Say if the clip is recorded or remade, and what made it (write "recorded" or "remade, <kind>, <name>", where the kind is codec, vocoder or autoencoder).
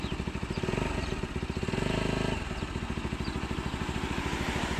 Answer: recorded